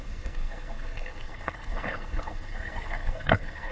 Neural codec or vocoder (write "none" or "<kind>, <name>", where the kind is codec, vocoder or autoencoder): codec, SNAC